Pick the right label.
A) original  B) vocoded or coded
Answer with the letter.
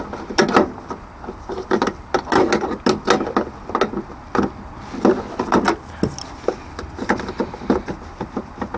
A